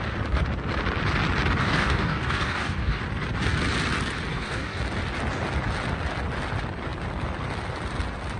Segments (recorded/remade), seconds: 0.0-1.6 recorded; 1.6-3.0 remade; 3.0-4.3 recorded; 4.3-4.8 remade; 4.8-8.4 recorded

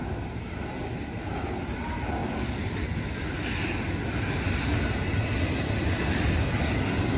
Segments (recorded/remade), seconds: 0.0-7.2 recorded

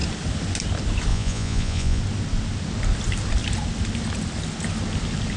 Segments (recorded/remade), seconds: 0.0-1.1 recorded; 1.1-2.0 remade; 2.0-5.4 recorded

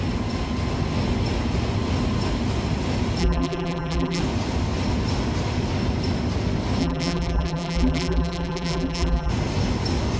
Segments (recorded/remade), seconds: 0.0-3.2 recorded; 3.2-4.2 remade; 4.2-6.8 recorded; 6.8-9.3 remade; 9.3-10.2 recorded

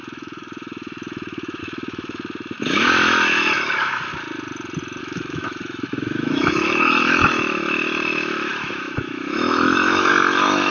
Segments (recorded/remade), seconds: 0.0-4.1 remade; 4.1-5.0 recorded; 5.0-10.7 remade

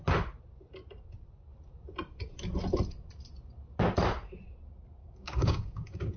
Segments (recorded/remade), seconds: 0.0-5.0 recorded; 5.0-6.2 remade

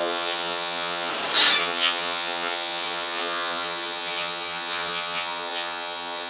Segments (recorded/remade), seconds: 0.0-1.1 remade; 1.1-1.6 recorded; 1.6-6.3 remade